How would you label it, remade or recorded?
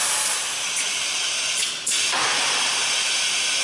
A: recorded